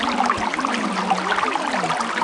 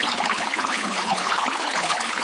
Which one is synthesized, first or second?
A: second